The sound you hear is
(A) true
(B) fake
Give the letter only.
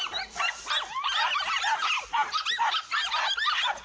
A